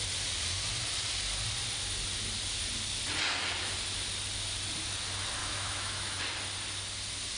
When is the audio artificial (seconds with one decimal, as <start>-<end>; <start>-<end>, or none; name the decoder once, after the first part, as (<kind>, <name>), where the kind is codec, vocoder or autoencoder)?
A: 5.4-6.2 (autoencoder, DAC-VAE)